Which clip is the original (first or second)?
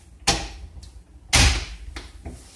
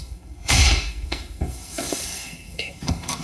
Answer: first